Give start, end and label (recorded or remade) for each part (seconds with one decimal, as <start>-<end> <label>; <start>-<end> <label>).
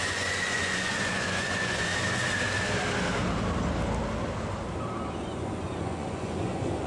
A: 0.0-1.9 remade; 1.9-5.1 recorded; 5.1-6.9 remade